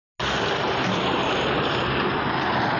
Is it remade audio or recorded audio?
recorded